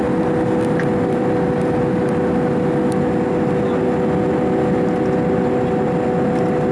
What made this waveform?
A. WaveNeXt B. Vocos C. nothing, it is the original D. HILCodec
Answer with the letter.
C